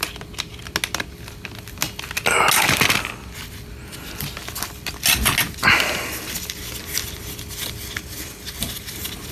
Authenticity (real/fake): real